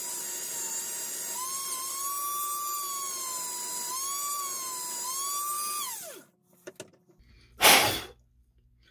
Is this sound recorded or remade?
recorded